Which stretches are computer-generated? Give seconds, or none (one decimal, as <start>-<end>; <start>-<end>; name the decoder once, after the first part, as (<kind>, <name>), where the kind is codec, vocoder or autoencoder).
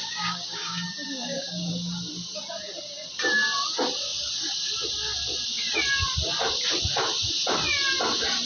0.0-1.7 (codec, DAC)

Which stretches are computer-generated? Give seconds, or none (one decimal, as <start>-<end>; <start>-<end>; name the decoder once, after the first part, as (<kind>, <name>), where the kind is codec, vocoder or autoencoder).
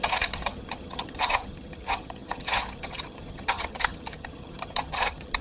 0.0-5.4 (vocoder, HiFi-GAN)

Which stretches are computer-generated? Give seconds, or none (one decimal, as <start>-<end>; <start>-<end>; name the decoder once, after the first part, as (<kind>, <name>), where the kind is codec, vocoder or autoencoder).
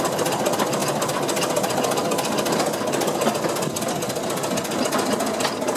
none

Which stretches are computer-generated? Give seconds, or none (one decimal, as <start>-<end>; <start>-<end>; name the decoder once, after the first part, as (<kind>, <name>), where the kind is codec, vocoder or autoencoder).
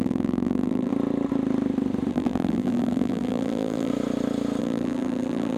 0.0-0.9 (vocoder, BigVGAN v2); 2.1-3.9; 4.6-5.6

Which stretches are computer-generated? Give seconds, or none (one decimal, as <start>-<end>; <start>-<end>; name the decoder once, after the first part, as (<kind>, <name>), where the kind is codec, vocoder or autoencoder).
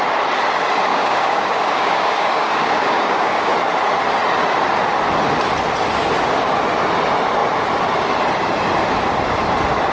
0.9-3.5 (codec, DAC)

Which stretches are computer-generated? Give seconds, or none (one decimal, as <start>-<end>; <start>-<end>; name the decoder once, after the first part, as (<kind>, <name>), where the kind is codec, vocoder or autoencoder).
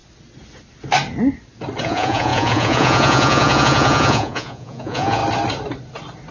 1.8-5.2 (vocoder, Vocos)